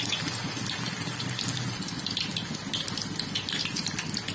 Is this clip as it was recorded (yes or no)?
yes